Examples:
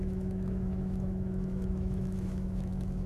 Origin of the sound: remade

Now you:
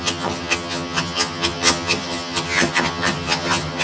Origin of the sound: remade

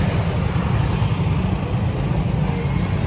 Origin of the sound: recorded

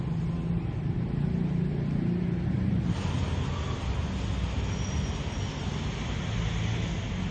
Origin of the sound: recorded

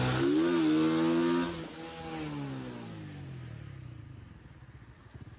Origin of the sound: recorded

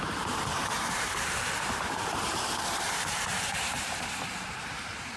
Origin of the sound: remade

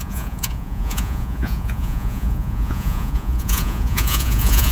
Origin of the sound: remade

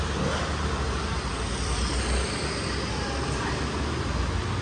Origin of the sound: recorded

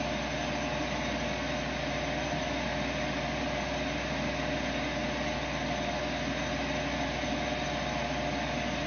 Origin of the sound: recorded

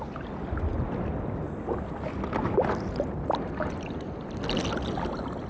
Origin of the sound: recorded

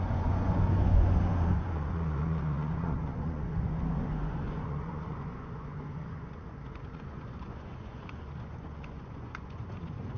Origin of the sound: remade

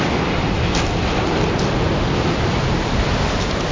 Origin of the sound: recorded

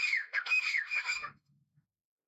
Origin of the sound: remade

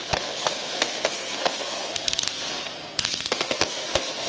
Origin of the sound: remade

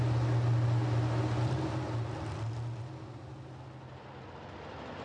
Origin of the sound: recorded